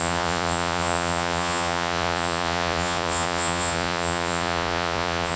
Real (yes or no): no